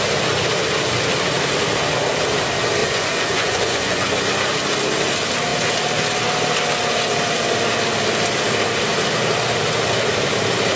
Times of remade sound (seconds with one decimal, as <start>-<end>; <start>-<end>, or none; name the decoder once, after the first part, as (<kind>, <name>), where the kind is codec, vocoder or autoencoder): 2.8-4.1 (vocoder, Vocos)